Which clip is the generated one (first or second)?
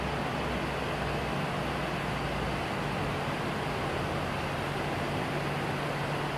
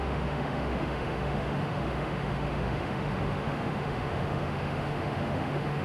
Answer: second